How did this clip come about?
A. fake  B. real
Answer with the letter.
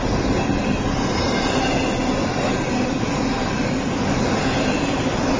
B